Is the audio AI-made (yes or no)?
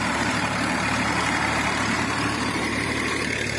yes